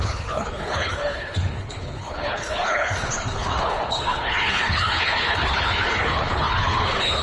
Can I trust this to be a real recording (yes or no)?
no